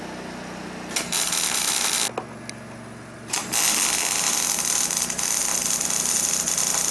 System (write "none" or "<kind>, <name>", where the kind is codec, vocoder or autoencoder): none